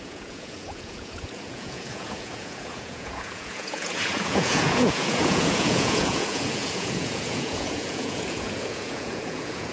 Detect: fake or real fake